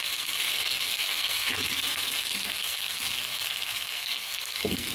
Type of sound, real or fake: fake